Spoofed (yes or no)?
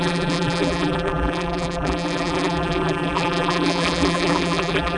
yes